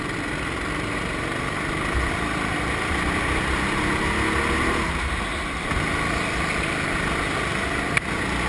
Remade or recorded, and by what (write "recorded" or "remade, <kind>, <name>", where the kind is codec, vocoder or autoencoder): recorded